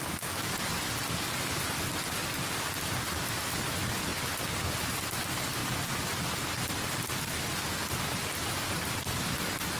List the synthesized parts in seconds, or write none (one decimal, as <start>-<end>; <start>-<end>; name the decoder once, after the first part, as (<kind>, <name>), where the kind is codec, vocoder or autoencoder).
0.0-2.2 (vocoder, BigVGAN v2); 3.0-4.1; 4.8-5.6; 8.4-9.8